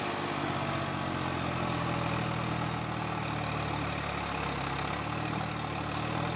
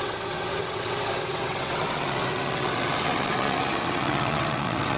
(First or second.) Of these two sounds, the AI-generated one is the second